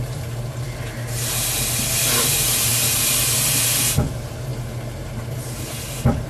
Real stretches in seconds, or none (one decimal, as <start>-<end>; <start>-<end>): 0.0-6.3